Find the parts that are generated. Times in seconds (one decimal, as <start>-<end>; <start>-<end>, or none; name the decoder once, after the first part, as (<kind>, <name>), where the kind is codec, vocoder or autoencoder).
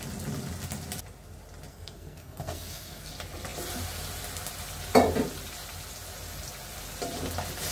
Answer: 1.7-3.1 (codec, SNAC)